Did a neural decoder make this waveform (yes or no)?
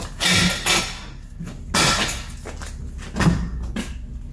no